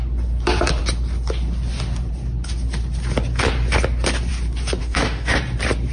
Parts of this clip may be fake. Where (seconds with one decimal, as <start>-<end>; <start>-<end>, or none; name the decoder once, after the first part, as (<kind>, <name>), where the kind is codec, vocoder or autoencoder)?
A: 4.8-5.4 (autoencoder, DAC-VAE)